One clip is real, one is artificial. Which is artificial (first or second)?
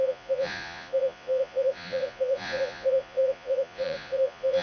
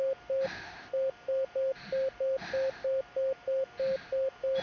first